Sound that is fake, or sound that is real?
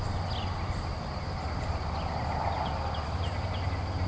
real